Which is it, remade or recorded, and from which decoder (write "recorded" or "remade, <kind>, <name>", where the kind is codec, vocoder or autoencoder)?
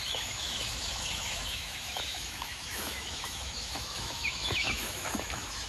remade, autoencoder, DAC-VAE